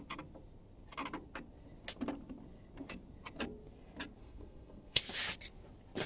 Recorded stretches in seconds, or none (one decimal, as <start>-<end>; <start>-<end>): 0.0-4.2; 5.0-6.1